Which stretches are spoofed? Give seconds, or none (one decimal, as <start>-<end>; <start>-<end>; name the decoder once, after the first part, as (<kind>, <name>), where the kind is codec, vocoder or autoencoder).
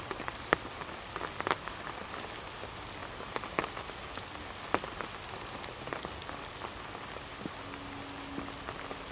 none